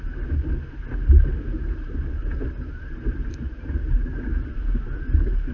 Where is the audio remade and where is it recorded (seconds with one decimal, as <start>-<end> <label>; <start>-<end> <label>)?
0.0-1.0 recorded; 1.0-4.3 remade; 4.3-5.5 recorded